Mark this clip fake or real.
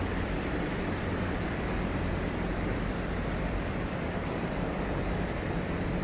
fake